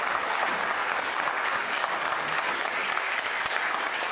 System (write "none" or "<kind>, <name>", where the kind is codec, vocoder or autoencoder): codec, DAC